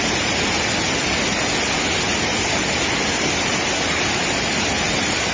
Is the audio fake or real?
real